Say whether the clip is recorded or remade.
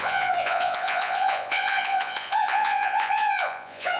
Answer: remade